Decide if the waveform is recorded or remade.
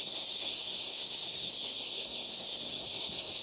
remade